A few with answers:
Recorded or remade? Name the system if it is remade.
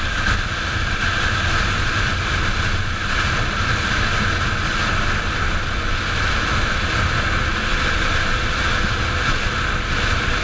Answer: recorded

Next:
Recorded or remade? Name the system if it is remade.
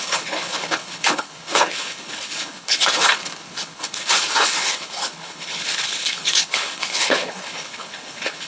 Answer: remade, codec, HILCodec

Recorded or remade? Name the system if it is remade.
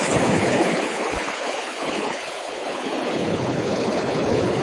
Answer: remade, codec, HILCodec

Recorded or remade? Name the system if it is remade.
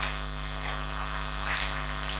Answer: recorded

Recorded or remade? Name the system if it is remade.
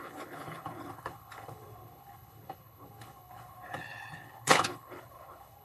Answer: remade, codec, HILCodec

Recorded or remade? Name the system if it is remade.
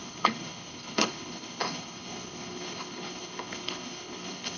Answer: remade, codec, HILCodec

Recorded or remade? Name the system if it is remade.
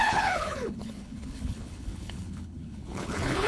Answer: remade, codec, HILCodec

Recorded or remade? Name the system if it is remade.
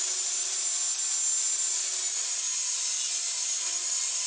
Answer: recorded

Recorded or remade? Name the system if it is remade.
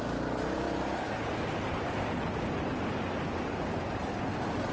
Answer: recorded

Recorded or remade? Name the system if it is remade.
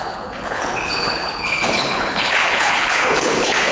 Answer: remade, codec, HILCodec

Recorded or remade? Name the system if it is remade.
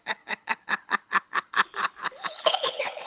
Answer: remade, codec, HILCodec